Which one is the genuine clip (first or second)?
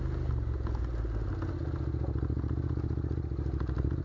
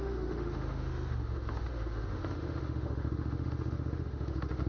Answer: first